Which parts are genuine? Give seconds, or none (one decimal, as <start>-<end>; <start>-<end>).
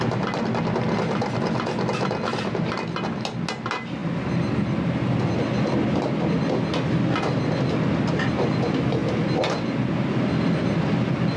0.0-11.4